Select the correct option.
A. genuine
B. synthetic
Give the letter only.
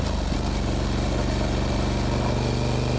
A